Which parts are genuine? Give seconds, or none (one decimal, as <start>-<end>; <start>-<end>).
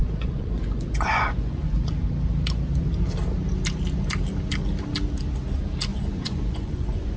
1.9-5.9